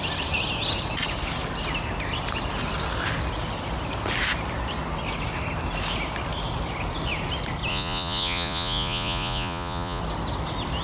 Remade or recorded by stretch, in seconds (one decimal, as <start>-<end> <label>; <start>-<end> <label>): 0.0-7.7 recorded; 7.7-10.0 remade; 10.0-10.8 recorded